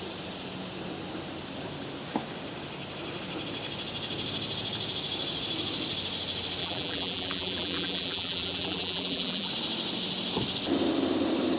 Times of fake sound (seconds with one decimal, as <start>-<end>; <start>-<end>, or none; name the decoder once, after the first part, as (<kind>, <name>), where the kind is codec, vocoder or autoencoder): 6.6-9.5 (vocoder, BigVGAN v2)